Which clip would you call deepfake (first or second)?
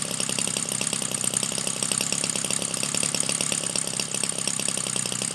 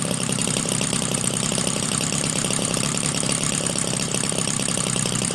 second